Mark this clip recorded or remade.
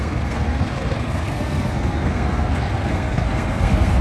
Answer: remade